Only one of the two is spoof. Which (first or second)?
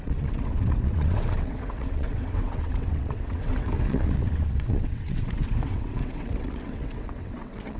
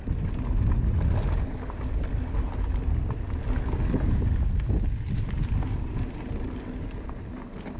first